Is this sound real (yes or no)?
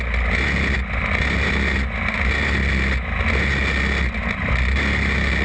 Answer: yes